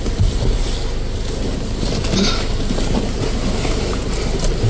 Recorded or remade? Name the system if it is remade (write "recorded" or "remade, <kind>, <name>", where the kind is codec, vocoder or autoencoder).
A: recorded